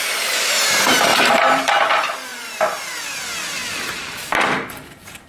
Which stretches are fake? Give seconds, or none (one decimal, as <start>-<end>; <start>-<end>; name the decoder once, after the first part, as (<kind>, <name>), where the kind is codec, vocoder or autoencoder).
1.1-1.7 (vocoder, BigVGAN v2)